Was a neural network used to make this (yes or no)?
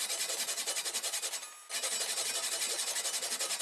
no